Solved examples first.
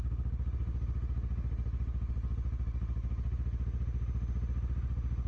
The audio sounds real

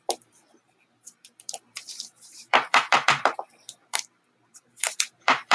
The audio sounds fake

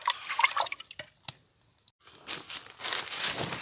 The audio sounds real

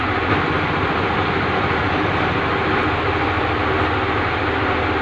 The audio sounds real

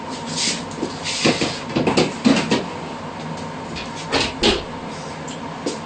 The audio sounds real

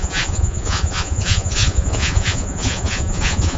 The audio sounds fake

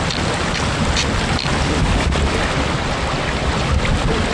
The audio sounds real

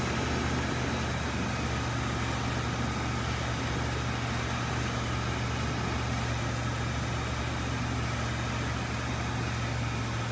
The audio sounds real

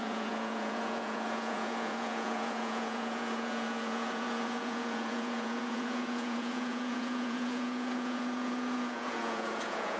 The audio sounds fake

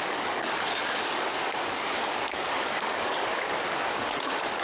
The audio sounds fake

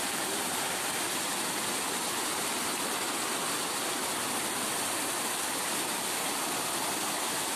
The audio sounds real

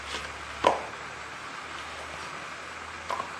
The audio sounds real